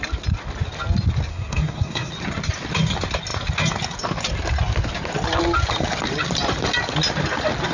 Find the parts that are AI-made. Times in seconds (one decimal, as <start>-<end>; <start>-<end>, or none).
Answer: 1.3-2.1